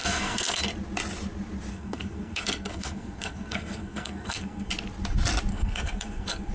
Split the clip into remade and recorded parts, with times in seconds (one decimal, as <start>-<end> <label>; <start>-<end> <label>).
0.0-0.6 remade; 0.6-1.7 recorded; 1.7-4.7 remade; 4.7-5.5 recorded; 5.5-6.5 remade

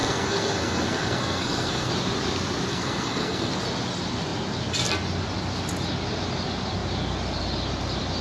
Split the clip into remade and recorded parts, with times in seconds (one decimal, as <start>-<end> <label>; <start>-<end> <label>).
0.0-1.9 remade; 1.9-2.7 recorded; 2.7-3.5 remade; 3.5-8.2 recorded

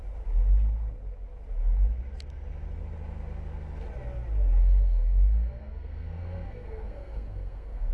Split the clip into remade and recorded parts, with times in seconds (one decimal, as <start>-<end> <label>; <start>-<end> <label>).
0.0-4.6 recorded; 4.6-7.9 remade

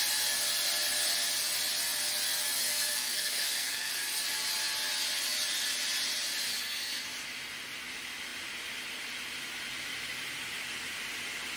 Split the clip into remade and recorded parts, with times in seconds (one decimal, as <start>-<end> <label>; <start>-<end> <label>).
0.0-2.7 recorded; 2.7-3.9 remade; 3.9-6.5 recorded; 6.5-7.0 remade; 7.0-11.6 recorded

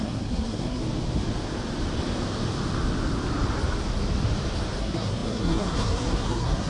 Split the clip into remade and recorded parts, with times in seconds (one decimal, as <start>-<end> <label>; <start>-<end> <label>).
0.0-0.8 remade; 0.8-4.8 recorded; 4.8-6.7 remade